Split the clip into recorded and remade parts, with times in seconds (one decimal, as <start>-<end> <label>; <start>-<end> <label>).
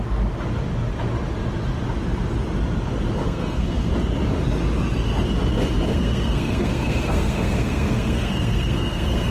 0.0-3.2 recorded; 3.2-3.9 remade; 3.9-5.9 recorded; 5.9-9.3 remade